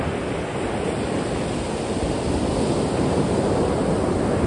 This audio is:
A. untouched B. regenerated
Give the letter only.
A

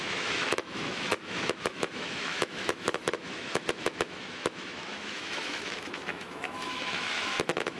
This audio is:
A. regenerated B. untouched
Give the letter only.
A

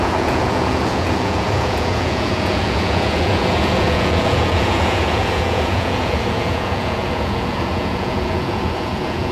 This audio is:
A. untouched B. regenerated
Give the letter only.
B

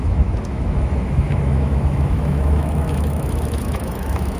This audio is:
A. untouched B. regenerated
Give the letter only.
B